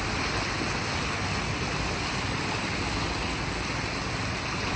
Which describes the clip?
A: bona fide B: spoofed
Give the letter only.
A